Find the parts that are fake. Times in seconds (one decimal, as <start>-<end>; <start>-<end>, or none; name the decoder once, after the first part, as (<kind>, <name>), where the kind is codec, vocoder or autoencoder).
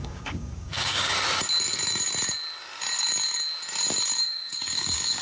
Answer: 0.0-1.1 (codec, DAC); 4.2-5.2